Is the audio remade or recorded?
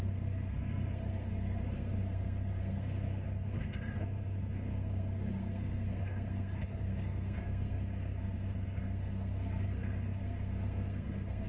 remade